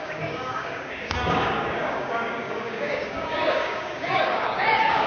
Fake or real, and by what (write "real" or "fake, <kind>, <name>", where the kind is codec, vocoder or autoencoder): fake, codec, DAC